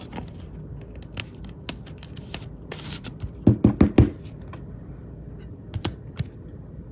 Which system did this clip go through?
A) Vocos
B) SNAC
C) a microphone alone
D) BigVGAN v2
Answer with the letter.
C